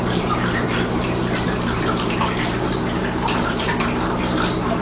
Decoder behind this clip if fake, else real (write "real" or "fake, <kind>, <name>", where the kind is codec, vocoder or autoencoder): fake, vocoder, BigVGAN v2